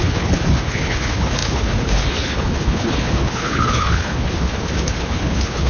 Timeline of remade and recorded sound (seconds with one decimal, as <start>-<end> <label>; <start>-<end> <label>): 0.0-5.7 remade